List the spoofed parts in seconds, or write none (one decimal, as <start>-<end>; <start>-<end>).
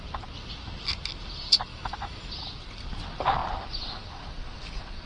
1.7-2.3